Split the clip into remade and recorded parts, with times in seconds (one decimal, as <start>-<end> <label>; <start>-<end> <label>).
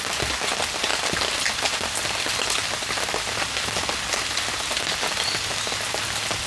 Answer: 0.0-6.5 recorded